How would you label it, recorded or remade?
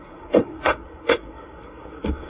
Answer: remade